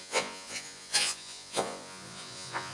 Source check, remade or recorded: remade